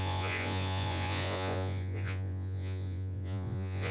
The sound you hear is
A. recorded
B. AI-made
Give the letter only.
B